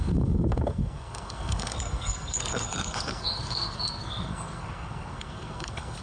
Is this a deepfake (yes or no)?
yes